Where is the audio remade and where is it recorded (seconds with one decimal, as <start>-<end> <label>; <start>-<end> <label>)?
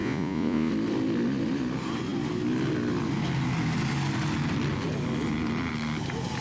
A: 0.0-0.7 remade; 0.7-6.4 recorded